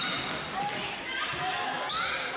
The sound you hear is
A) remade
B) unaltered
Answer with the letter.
B